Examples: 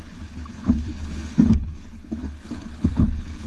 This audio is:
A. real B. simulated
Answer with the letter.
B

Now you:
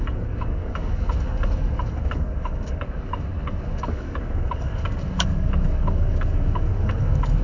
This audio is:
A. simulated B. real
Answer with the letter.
A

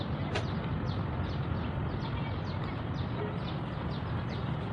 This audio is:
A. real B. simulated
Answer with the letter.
A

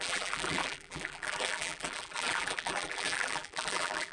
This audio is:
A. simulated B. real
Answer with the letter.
A